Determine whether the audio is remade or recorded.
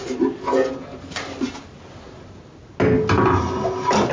recorded